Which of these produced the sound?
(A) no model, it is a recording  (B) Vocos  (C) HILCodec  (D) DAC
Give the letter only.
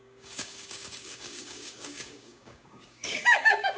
D